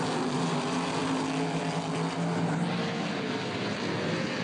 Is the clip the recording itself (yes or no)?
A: yes